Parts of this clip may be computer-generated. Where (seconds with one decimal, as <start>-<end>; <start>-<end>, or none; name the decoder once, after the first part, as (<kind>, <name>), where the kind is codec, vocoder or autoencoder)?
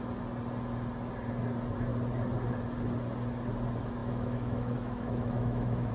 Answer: 4.0-5.9 (autoencoder, DAC-VAE)